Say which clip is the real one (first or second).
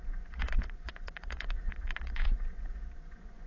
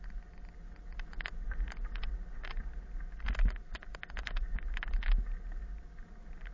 second